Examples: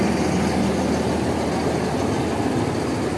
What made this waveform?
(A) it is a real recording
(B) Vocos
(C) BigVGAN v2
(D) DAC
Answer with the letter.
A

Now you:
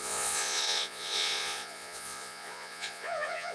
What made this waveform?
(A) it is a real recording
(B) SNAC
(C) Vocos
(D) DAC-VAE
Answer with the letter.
C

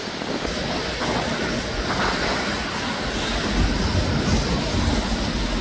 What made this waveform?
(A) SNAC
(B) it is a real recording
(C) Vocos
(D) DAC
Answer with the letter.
B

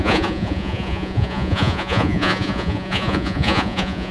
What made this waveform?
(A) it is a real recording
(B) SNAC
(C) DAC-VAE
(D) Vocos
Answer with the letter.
D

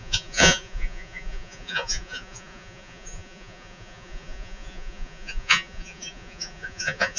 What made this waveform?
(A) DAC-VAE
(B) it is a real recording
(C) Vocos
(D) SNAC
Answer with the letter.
C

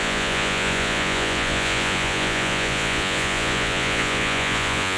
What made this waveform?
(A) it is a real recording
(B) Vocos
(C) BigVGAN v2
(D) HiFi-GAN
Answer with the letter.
B